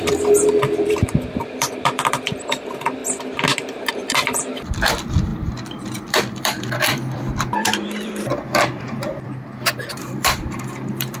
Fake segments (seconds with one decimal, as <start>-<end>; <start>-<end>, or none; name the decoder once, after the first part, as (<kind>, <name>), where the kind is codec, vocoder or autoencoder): 0.0-3.0 (vocoder, BigVGAN v2); 3.9-5.3; 6.0-11.2